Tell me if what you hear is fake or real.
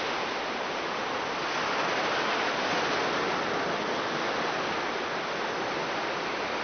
real